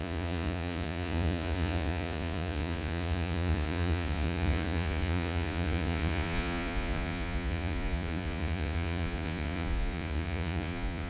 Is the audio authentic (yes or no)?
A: no